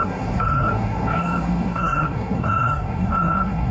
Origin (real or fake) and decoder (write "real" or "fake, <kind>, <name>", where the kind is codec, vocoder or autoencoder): fake, codec, SNAC